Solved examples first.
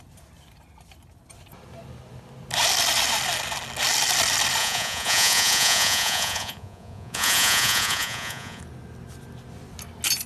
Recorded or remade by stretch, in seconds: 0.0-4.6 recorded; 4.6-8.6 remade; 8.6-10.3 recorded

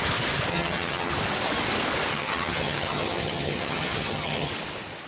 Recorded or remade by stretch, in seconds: 0.0-0.5 recorded; 0.5-1.1 remade; 1.1-2.1 recorded; 2.1-4.5 remade; 4.5-5.1 recorded

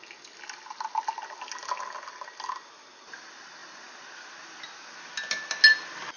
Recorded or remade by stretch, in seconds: 0.0-6.2 recorded

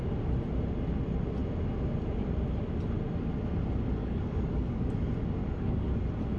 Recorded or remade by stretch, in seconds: 0.0-4.0 recorded; 4.0-4.9 remade; 4.9-5.4 recorded; 5.4-5.9 remade; 5.9-6.4 recorded

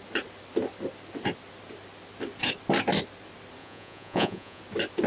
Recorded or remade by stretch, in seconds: 0.0-3.6 recorded; 3.6-4.6 remade; 4.6-5.1 recorded

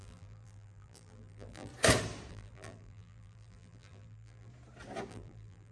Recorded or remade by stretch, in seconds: 0.0-1.7 remade; 1.7-2.3 recorded; 2.3-4.5 remade; 4.5-5.1 recorded; 5.1-5.7 remade